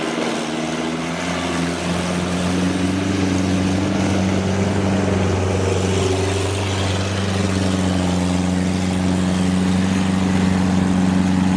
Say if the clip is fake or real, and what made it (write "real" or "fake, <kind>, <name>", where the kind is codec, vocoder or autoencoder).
real